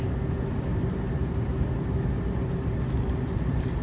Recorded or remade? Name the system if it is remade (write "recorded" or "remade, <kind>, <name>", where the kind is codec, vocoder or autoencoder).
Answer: recorded